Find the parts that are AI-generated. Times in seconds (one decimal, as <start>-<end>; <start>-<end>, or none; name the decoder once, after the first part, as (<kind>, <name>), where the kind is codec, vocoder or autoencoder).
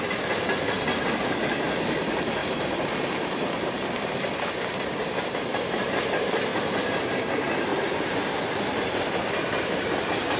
2.4-5.3 (vocoder, BigVGAN v2); 7.7-8.3